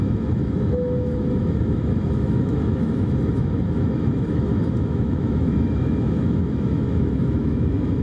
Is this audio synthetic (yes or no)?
yes